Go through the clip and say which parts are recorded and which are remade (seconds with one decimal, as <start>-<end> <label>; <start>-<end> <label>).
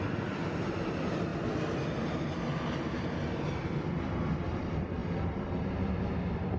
0.0-6.6 recorded